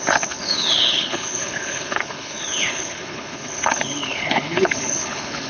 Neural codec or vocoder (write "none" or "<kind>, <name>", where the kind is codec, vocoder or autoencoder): codec, HILCodec